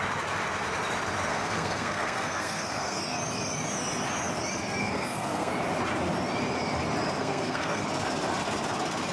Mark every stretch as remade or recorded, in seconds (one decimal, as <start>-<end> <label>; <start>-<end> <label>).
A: 0.0-1.3 recorded; 1.3-3.0 remade; 3.0-4.8 recorded; 4.8-5.5 remade; 5.5-7.2 recorded; 7.2-7.8 remade; 7.8-9.1 recorded